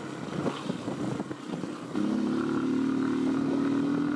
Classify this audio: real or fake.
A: real